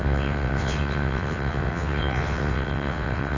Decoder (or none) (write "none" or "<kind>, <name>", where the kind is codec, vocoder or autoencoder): vocoder, WaveNeXt